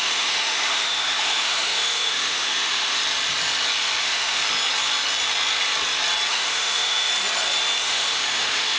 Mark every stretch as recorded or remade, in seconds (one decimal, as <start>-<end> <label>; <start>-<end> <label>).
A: 0.0-3.0 remade; 3.0-4.0 recorded; 4.0-4.4 remade; 4.4-6.3 recorded; 6.3-7.1 remade; 7.1-7.8 recorded; 7.8-8.8 remade